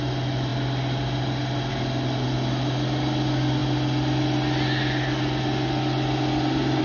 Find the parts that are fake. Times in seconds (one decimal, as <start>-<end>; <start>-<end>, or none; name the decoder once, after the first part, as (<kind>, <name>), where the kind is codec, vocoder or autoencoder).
none